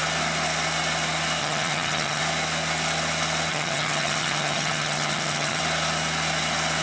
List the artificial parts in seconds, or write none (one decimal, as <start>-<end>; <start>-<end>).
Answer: 1.4-2.2; 3.5-5.6